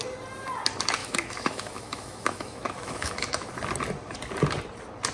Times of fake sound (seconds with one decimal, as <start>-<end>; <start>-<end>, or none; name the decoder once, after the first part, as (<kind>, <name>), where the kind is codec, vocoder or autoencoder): 1.0-3.5 (autoencoder, DAC-VAE)